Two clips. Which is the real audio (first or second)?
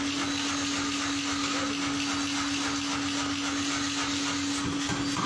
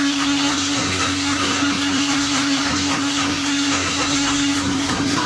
first